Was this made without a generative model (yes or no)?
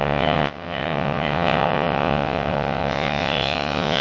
no